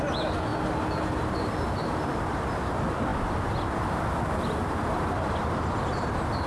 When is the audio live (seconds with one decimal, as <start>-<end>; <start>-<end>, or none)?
0.0-6.5